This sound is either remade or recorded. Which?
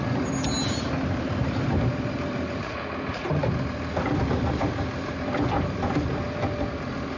recorded